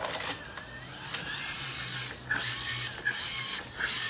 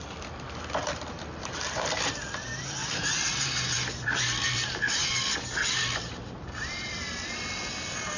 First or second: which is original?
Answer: first